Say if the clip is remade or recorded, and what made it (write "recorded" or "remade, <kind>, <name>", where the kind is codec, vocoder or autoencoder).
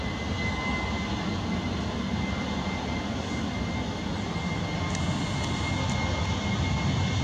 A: recorded